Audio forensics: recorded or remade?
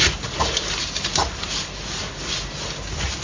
recorded